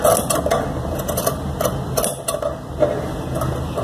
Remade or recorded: recorded